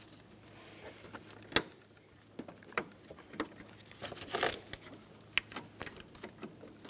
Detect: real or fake real